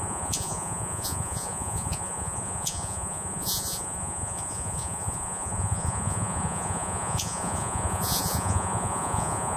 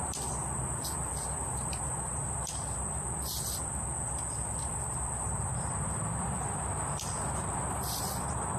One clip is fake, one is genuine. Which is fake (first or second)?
first